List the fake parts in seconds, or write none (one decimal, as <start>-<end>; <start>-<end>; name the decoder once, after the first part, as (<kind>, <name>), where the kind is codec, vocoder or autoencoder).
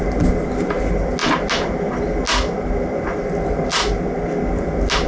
none